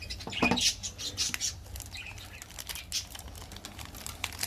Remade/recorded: recorded